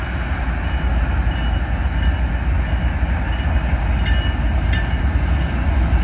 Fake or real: real